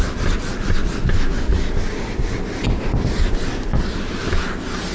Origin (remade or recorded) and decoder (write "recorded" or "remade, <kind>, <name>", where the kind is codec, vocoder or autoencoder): recorded